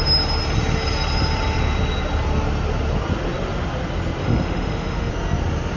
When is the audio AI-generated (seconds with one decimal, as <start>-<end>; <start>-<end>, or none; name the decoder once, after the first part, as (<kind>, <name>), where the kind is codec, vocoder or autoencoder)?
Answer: 4.2-5.1 (autoencoder, DAC-VAE)